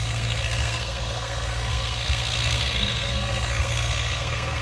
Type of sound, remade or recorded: remade